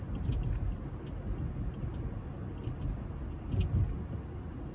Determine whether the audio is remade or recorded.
recorded